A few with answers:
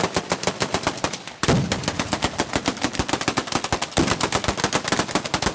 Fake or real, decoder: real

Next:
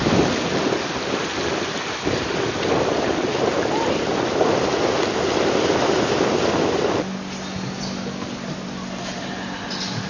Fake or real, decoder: real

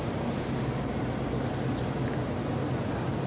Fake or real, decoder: real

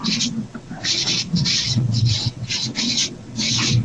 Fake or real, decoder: fake, vocoder, WaveNeXt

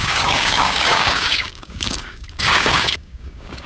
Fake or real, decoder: fake, codec, DAC